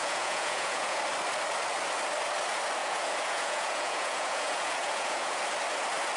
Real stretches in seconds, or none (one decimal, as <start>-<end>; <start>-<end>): 1.0-2.8; 5.4-6.2